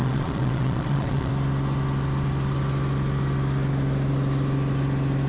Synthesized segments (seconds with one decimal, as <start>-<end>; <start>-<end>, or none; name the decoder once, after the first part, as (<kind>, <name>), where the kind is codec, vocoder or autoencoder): 0.0-1.3 (vocoder, Vocos)